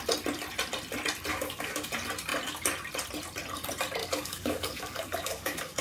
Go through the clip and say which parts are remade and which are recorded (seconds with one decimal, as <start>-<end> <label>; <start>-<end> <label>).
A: 0.0-1.3 recorded; 1.3-1.9 remade; 1.9-4.0 recorded; 4.0-5.8 remade